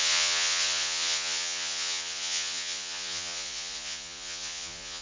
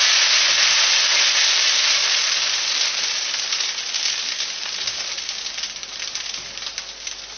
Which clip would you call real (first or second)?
second